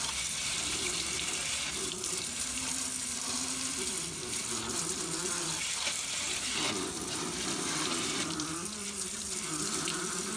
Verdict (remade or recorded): remade